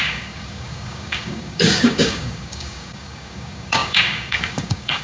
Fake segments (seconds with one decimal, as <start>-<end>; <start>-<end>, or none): 0.0-5.0